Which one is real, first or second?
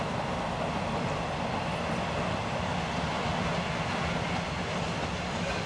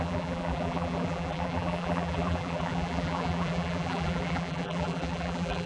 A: first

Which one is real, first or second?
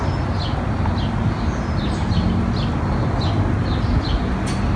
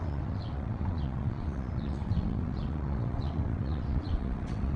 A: first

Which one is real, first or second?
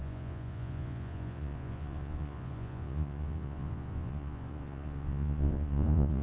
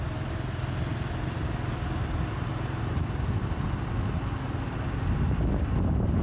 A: second